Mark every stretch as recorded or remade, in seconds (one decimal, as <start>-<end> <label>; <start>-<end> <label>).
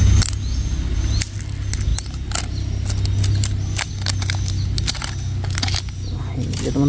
0.0-6.9 recorded